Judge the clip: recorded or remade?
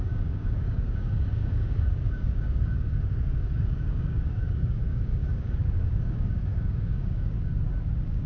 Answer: remade